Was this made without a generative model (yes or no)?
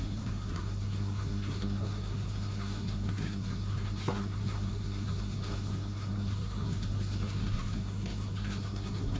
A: no